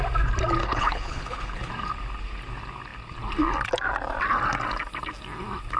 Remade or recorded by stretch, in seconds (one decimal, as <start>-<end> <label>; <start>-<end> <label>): 0.0-0.6 recorded; 0.6-1.7 remade; 1.7-5.8 recorded